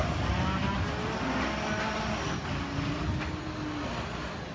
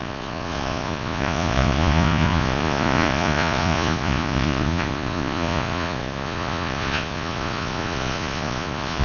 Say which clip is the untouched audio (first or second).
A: first